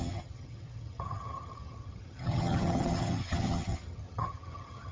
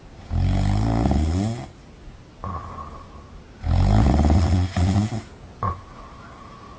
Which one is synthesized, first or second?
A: first